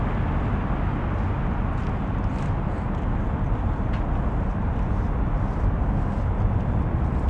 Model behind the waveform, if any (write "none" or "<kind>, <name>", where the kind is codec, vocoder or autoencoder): none